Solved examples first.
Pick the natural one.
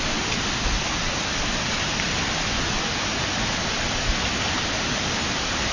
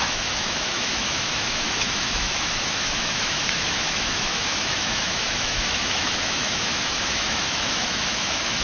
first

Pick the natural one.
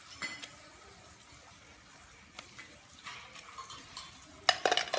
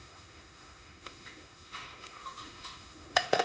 first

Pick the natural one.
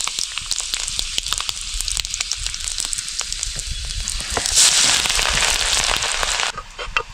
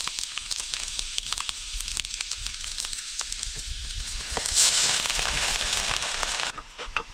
first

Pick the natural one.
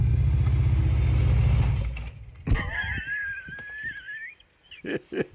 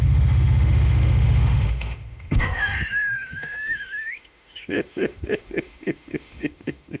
first